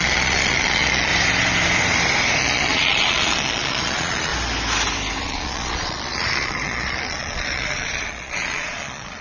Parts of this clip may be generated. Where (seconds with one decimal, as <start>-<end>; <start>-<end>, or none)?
0.0-1.1; 2.4-4.3; 5.2-9.2